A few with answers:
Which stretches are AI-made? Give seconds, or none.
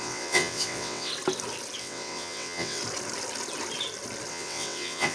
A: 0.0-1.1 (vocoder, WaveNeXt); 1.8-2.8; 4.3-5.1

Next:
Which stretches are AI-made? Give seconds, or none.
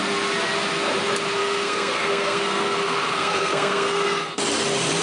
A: 1.4-4.4 (codec, SNAC)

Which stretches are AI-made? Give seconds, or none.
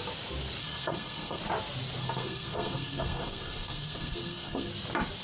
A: 0.6-1.4 (codec, SNAC); 2.0-4.7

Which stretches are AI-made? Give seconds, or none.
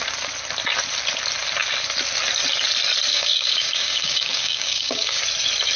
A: 3.1-5.2 (codec, DAC)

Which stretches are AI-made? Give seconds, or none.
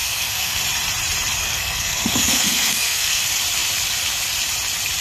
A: 0.0-0.6 (codec, SNAC); 1.4-3.2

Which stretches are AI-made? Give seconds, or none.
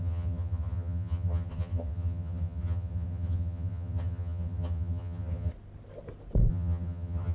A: 0.0-5.5 (vocoder, HiFi-GAN); 6.5-7.3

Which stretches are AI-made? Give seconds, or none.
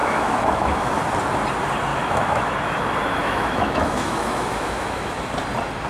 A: 0.0-0.9 (autoencoder, DAC-VAE); 1.9-2.5; 3.2-5.1